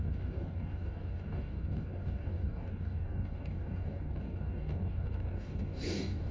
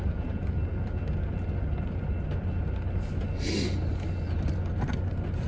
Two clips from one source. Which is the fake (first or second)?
first